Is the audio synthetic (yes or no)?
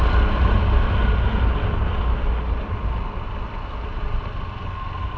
no